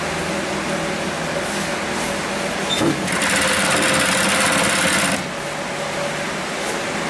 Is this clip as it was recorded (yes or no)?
yes